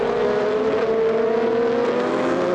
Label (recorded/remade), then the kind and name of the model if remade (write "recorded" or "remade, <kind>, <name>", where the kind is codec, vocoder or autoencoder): recorded